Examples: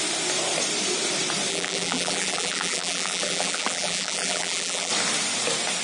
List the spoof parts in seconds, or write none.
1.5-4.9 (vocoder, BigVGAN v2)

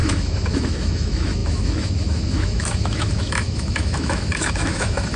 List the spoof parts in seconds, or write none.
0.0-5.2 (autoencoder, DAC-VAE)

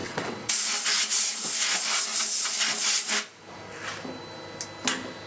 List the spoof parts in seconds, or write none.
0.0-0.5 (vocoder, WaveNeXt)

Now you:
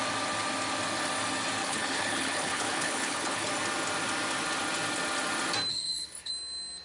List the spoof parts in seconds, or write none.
1.6-3.5 (codec, HILCodec); 5.7-6.3